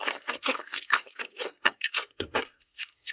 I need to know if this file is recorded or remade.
remade